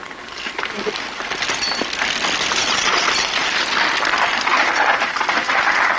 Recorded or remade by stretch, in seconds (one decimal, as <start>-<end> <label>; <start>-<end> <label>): 0.0-6.0 recorded